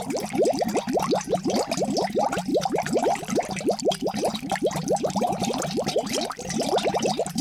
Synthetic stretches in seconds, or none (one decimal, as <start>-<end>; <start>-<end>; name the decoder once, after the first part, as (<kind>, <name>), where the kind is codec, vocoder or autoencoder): none